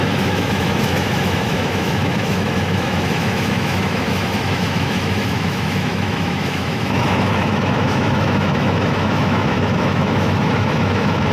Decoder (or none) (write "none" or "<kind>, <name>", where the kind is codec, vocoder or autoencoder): autoencoder, DAC-VAE